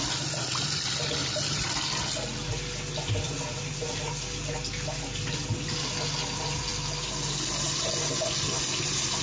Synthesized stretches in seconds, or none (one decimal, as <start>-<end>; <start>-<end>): none